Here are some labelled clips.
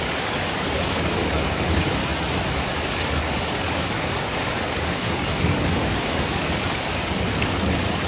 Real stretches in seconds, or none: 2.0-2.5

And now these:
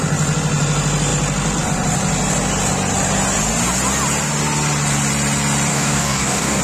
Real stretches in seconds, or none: 0.0-5.7

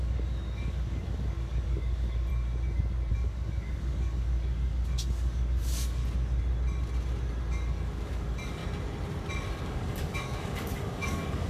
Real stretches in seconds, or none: 2.3-3.1; 6.0-7.5; 8.6-9.5